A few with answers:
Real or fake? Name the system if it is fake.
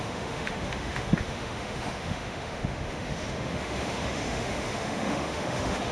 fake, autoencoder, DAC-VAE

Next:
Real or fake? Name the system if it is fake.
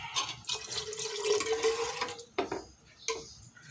real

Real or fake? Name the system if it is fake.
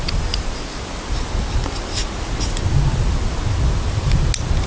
real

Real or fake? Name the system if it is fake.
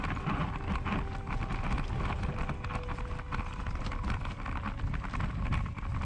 real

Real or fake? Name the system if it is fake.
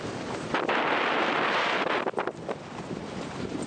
real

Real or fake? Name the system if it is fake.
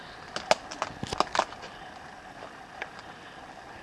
real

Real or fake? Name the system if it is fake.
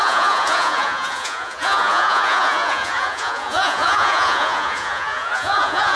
fake, vocoder, Vocos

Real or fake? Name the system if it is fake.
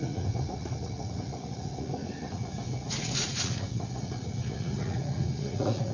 fake, vocoder, Vocos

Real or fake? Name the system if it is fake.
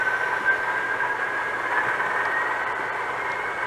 real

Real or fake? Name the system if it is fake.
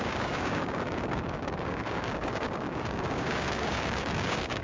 fake, codec, DAC